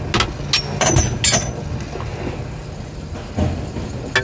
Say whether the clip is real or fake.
real